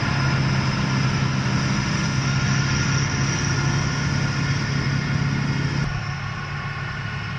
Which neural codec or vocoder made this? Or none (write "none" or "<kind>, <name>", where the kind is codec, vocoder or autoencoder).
none